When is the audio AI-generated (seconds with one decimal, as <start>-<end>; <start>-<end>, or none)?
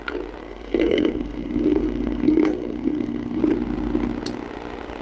0.4-3.4